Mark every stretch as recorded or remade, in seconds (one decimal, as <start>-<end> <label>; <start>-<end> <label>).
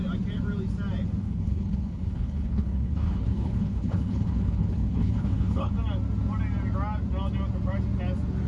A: 0.0-1.2 recorded; 1.2-5.7 remade; 5.7-8.5 recorded